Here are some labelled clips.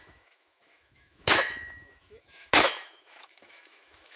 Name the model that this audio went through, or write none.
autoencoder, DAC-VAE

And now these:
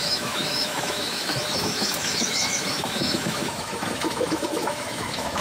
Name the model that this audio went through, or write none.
autoencoder, DAC-VAE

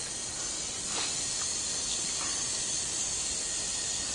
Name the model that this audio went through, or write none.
none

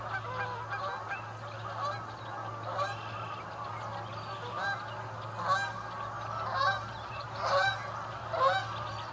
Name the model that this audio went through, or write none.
none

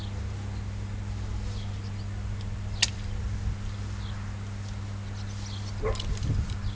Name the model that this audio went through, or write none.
none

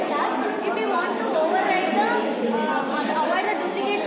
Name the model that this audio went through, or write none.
none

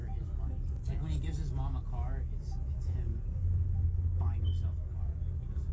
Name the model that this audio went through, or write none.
none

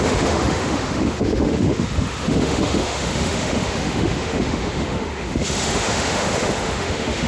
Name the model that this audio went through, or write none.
autoencoder, DAC-VAE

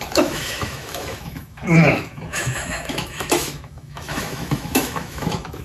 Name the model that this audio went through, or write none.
autoencoder, DAC-VAE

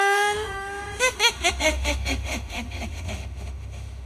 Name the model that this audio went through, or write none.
autoencoder, DAC-VAE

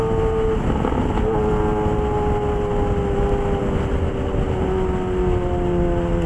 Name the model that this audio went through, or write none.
none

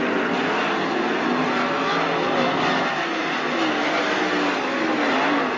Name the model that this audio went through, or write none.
none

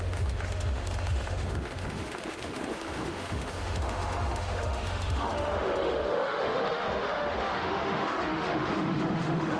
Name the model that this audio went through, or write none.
autoencoder, DAC-VAE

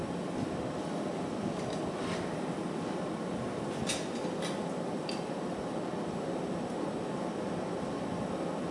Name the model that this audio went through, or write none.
none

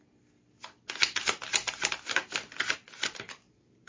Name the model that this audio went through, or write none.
none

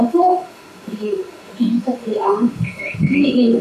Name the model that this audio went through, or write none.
autoencoder, DAC-VAE